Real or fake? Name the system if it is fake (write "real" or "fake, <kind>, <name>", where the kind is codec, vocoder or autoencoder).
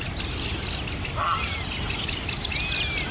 real